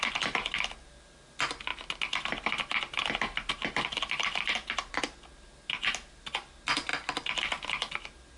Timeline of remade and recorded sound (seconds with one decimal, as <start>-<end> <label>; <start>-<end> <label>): 0.0-8.4 recorded